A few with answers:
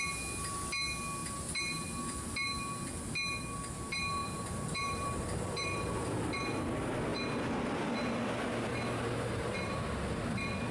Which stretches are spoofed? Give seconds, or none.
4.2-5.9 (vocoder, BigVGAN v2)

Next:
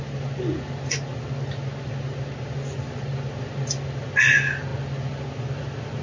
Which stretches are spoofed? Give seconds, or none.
none

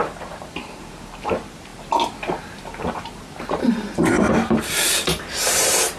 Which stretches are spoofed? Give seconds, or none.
0.0-6.0 (vocoder, BigVGAN v2)

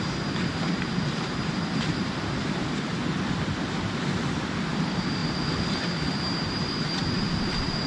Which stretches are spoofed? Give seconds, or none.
0.0-2.9 (vocoder, BigVGAN v2); 4.7-5.2; 5.7-7.9

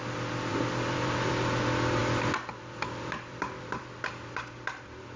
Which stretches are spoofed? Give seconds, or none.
0.5-1.3 (vocoder, BigVGAN v2); 2.0-5.2

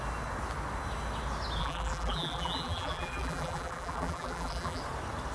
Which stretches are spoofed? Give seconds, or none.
1.6-4.8 (vocoder, BigVGAN v2)